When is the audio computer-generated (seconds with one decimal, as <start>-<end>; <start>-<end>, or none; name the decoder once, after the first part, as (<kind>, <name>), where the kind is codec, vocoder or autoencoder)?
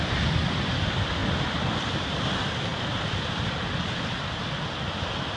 none